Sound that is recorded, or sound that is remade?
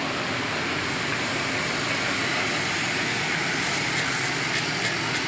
recorded